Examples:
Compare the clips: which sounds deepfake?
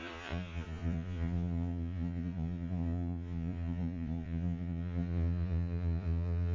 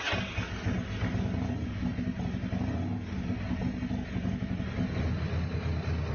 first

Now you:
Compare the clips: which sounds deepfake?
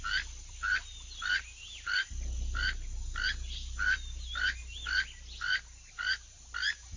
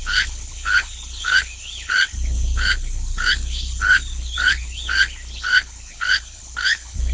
second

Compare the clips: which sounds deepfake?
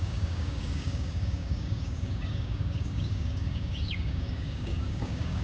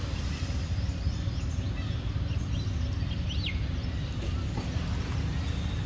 first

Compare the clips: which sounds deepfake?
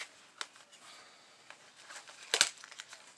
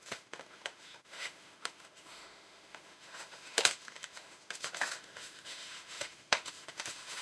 second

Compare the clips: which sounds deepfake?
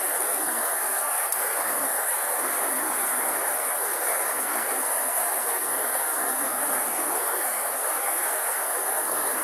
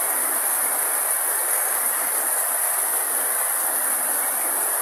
first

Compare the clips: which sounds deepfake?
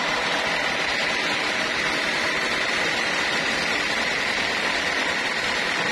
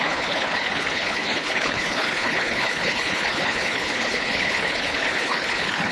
second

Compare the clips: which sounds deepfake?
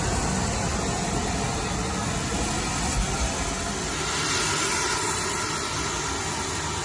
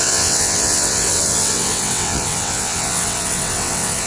second